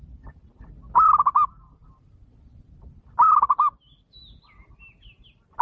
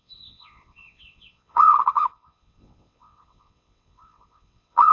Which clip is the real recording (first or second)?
first